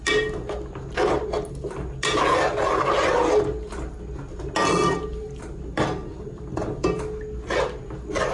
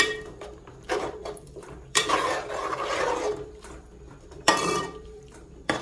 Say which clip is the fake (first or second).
second